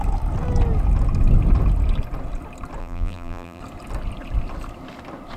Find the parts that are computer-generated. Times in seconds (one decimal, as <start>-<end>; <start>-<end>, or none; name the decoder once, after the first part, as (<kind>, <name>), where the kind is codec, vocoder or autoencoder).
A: 2.8-3.6 (vocoder, BigVGAN v2)